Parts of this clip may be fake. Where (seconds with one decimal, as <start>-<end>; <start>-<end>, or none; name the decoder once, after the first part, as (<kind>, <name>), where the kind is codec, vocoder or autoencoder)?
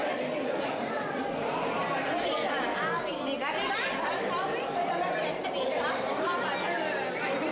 none